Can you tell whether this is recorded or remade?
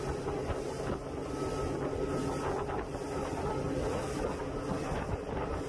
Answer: recorded